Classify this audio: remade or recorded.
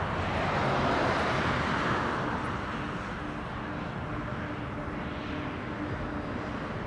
recorded